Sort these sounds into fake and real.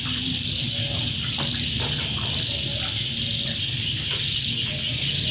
real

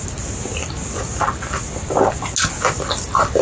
real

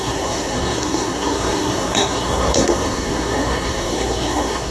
fake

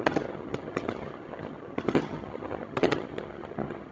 fake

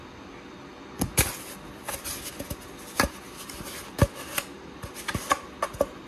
real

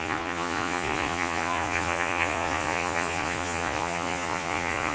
fake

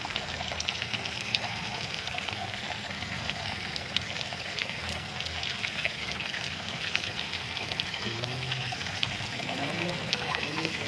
fake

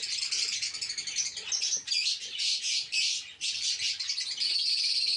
real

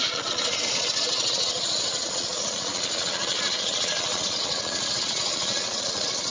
fake